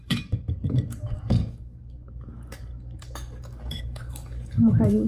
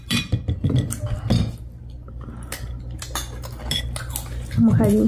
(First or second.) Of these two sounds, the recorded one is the second